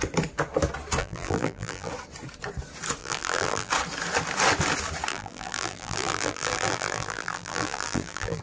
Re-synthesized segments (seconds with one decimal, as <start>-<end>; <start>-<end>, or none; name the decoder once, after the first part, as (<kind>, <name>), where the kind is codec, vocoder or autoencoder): 1.0-1.9 (vocoder, BigVGAN v2); 3.0-3.7; 5.1-8.4